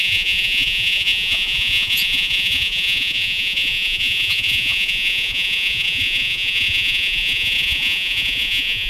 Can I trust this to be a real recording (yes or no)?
no